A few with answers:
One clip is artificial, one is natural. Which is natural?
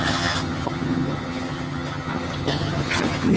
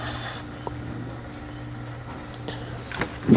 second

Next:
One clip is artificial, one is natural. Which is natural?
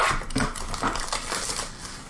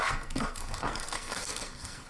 first